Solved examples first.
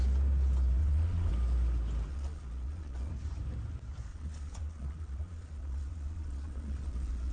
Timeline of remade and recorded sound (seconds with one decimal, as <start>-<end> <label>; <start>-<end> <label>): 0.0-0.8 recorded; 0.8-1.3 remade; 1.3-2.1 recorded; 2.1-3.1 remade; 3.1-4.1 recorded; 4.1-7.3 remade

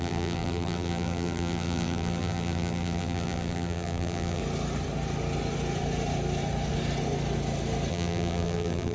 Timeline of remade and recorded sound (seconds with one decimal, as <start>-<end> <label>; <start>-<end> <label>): 0.0-4.4 remade; 4.4-7.9 recorded; 7.9-8.9 remade

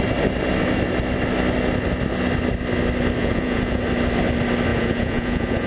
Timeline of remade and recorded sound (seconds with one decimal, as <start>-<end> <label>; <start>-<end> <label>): 0.0-3.2 recorded; 3.2-3.8 remade; 3.8-4.7 recorded; 4.7-5.7 remade